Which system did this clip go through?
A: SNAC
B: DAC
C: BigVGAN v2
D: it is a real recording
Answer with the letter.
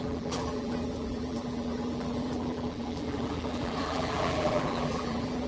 C